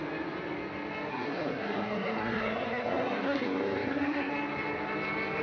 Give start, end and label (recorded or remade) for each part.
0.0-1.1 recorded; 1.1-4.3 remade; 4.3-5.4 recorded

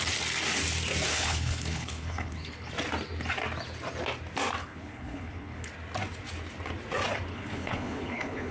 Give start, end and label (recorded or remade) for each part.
0.0-1.1 recorded; 1.1-2.7 remade; 2.7-4.6 recorded; 4.6-5.7 remade; 5.7-7.3 recorded; 7.3-8.5 remade

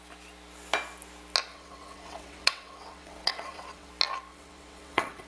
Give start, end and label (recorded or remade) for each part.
0.0-1.5 recorded; 1.5-3.9 remade; 3.9-4.3 recorded; 4.3-5.3 remade

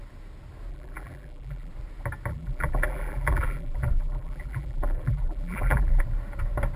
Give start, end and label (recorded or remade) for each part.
0.0-0.7 recorded; 0.7-1.7 remade; 1.7-2.3 recorded; 2.3-6.0 remade; 6.0-6.8 recorded